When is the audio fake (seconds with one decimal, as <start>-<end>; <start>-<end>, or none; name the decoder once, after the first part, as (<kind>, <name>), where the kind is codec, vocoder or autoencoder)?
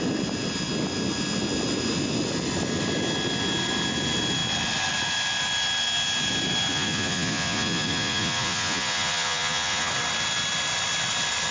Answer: 6.7-9.9 (vocoder, Vocos)